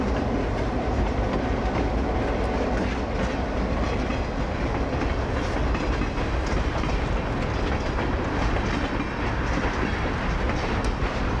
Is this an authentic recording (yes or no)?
yes